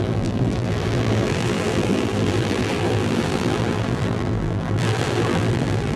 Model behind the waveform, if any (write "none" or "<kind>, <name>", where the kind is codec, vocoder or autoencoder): vocoder, BigVGAN v2